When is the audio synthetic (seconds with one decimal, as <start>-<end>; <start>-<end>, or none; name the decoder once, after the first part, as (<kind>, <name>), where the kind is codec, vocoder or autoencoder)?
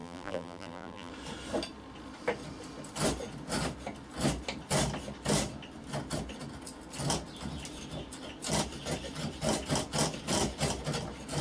0.0-1.1 (vocoder, BigVGAN v2)